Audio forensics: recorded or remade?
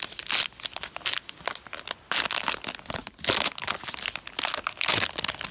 recorded